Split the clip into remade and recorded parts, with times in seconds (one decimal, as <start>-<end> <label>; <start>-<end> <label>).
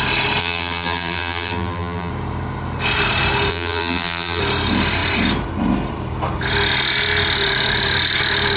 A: 0.0-0.4 recorded; 0.4-2.1 remade; 2.1-3.5 recorded; 3.5-4.4 remade; 4.4-8.6 recorded